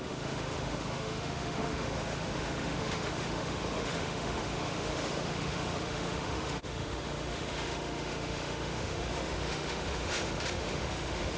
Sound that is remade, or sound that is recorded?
remade